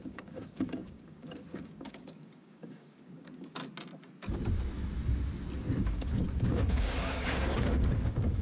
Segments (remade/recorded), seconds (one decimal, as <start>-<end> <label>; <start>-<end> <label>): 0.0-3.6 remade; 3.6-5.8 recorded; 5.8-8.4 remade